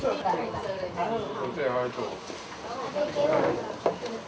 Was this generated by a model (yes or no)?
no